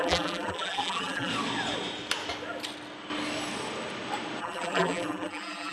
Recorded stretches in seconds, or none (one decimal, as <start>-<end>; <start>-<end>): 1.3-4.4